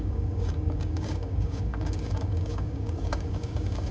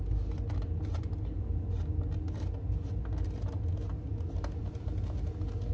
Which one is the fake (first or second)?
first